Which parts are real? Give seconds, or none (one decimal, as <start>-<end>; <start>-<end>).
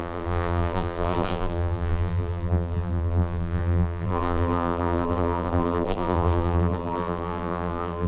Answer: none